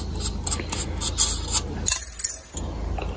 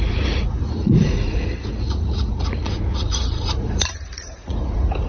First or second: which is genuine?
first